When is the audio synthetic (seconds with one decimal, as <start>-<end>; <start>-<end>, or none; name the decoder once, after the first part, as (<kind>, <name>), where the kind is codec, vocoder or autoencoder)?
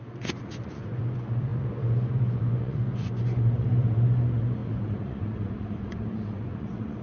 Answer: 0.0-7.0 (vocoder, Vocos)